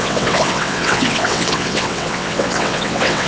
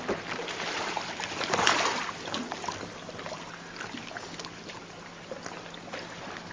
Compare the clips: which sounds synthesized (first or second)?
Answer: first